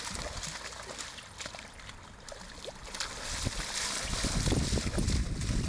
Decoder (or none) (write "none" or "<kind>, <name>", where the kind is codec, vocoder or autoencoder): none